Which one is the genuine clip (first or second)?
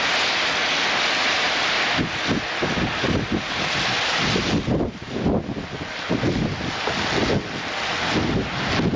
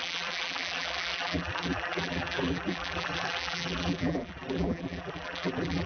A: first